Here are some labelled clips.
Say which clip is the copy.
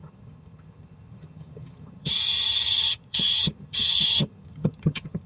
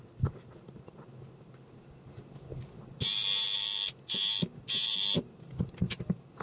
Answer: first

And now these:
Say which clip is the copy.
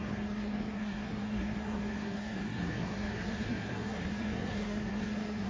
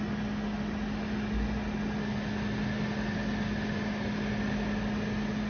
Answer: first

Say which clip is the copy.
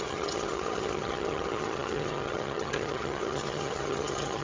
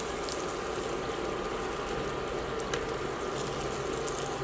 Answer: first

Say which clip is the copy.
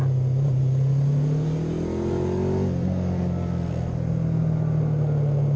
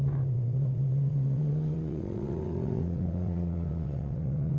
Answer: second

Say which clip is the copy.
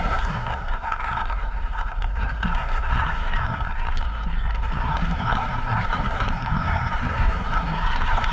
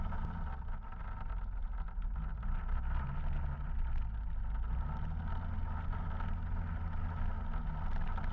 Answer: first